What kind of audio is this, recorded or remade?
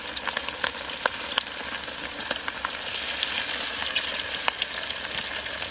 recorded